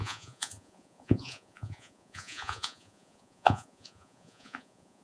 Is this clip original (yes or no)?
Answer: no